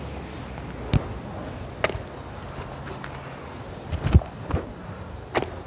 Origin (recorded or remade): recorded